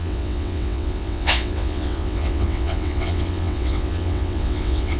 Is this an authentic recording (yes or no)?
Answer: no